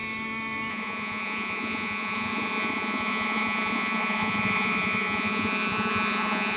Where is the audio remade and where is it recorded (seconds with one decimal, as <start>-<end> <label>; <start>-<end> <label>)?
0.0-0.7 recorded; 0.7-6.6 remade